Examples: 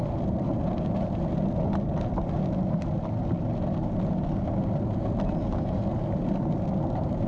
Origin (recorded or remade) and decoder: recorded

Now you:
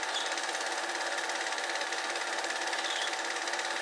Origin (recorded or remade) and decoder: recorded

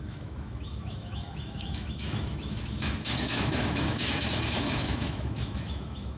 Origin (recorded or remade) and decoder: remade, autoencoder, DAC-VAE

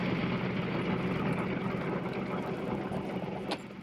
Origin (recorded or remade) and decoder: recorded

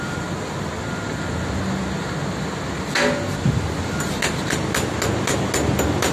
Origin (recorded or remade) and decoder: recorded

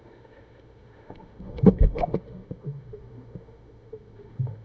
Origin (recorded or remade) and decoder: remade, autoencoder, DAC-VAE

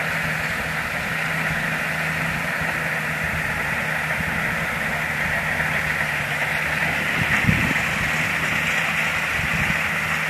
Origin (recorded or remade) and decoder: recorded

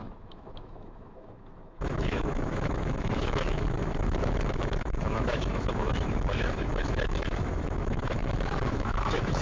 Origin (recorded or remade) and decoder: remade, autoencoder, DAC-VAE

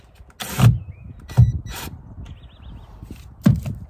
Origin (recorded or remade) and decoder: recorded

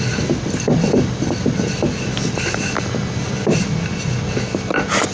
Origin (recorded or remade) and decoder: recorded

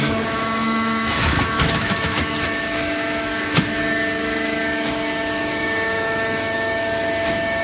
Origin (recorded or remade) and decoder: remade, autoencoder, DAC-VAE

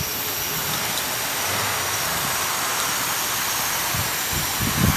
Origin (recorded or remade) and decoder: recorded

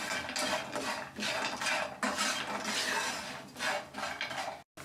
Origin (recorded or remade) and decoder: recorded